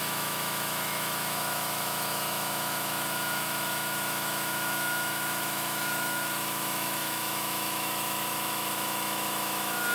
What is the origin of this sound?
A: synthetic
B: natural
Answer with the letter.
A